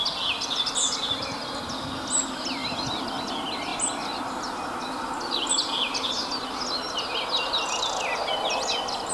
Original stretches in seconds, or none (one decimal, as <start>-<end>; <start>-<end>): 0.0-9.1